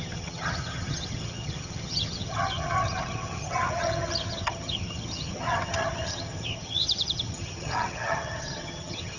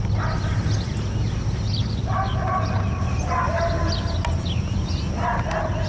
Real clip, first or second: second